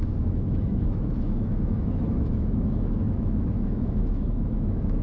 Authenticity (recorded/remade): remade